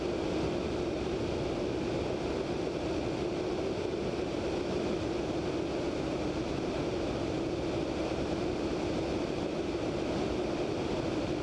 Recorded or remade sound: recorded